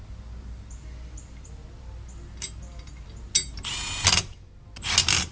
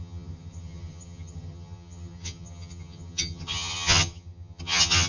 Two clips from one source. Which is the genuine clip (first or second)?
first